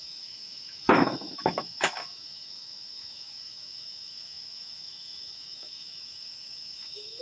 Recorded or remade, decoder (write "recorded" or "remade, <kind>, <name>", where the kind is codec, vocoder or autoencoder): remade, autoencoder, DAC-VAE